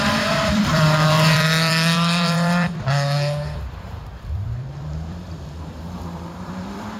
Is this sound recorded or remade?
remade